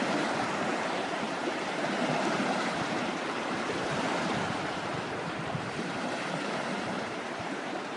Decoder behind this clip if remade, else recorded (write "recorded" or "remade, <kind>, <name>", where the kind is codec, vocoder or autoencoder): remade, vocoder, BigVGAN v2